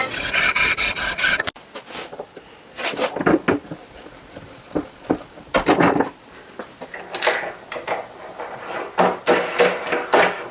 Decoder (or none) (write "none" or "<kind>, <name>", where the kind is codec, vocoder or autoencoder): none